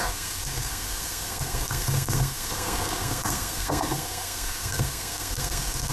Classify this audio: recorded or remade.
remade